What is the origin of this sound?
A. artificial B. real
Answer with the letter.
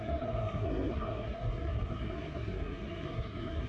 A